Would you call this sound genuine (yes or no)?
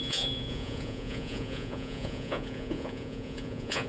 no